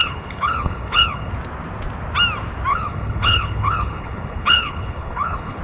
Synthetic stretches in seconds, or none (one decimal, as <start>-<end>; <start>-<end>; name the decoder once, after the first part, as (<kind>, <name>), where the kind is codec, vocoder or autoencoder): 0.0-1.3 (codec, HILCodec); 2.7-5.6